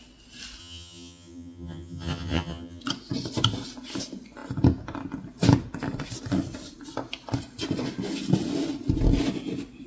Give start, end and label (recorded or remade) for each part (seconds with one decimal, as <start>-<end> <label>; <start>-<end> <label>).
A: 0.0-0.6 recorded; 0.6-2.8 remade; 2.8-9.9 recorded